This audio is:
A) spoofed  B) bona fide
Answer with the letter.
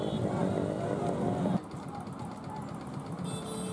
B